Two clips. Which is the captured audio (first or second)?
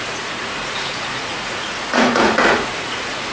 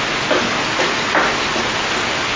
second